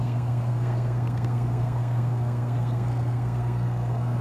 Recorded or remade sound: remade